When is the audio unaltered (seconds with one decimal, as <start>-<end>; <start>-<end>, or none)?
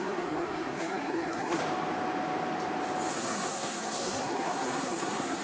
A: 1.6-3.1